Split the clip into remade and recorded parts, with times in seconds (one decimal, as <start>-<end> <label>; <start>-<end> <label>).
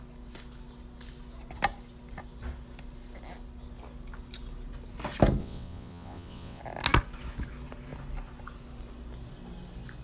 0.0-5.4 recorded; 5.4-6.6 remade; 6.6-10.0 recorded